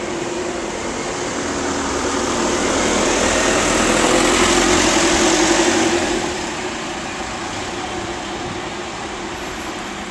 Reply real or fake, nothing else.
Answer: fake